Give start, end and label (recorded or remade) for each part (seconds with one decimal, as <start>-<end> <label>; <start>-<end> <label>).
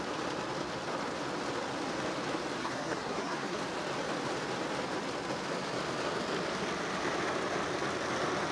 0.0-2.6 recorded; 2.6-3.6 remade; 3.6-8.5 recorded